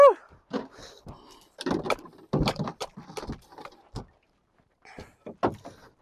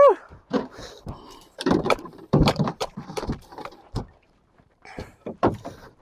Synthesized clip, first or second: second